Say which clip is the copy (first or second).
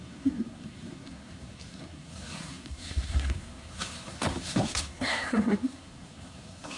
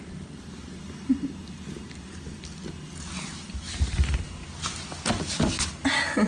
first